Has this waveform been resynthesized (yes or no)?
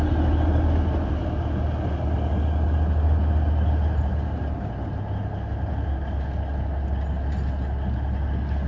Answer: no